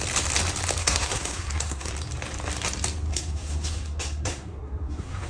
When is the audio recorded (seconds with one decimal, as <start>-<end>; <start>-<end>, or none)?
0.0-0.8; 1.9-3.1